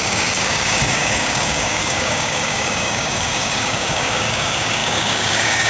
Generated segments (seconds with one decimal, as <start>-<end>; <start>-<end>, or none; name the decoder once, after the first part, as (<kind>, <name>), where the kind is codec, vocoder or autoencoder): 0.0-5.7 (codec, DAC)